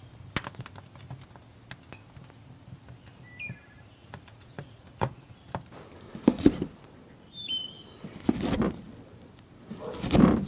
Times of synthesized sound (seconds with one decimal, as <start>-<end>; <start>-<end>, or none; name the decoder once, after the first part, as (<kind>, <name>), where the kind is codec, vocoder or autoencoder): 4.0-5.3 (vocoder, Vocos)